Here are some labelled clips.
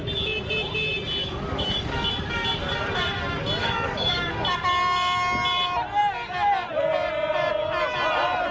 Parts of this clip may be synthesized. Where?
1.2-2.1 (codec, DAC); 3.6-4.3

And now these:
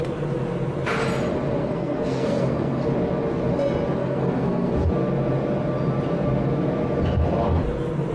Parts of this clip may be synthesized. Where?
1.6-2.8 (codec, SNAC); 4.0-4.7

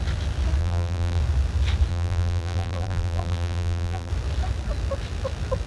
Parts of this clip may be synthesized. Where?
0.6-1.2 (vocoder, BigVGAN v2); 1.9-4.1